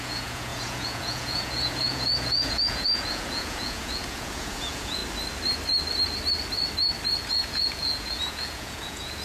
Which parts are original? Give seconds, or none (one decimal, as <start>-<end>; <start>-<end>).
5.0-7.3